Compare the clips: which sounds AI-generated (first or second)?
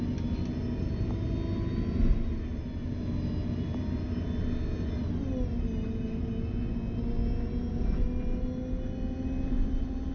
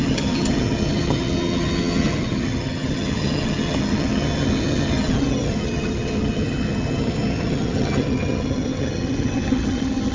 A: second